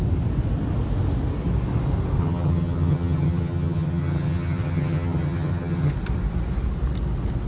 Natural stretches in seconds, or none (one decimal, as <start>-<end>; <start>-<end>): 0.0-2.2; 5.9-7.5